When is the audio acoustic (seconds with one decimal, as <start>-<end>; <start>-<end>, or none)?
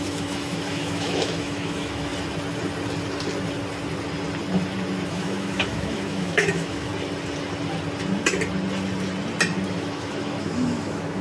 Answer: 2.1-5.1; 6.9-9.7